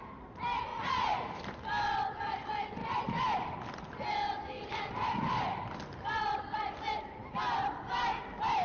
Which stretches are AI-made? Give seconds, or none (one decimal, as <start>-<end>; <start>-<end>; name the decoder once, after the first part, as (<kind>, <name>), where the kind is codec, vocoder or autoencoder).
0.7-1.4 (vocoder, Vocos)

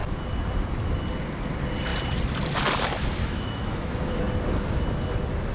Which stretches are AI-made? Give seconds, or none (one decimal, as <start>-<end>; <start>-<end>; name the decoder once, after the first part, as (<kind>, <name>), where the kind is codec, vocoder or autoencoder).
3.2-4.2 (autoencoder, DAC-VAE)

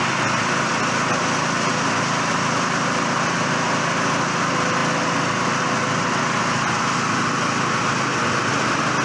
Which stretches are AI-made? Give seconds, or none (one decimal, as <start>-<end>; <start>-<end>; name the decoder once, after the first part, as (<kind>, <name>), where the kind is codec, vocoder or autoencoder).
none